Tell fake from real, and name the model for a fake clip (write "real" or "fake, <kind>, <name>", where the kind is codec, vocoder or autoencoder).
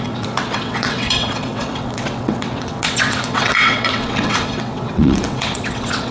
fake, vocoder, WaveNeXt